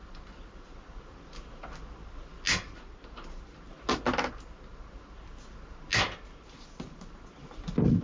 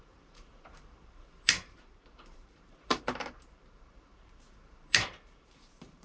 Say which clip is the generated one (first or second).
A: second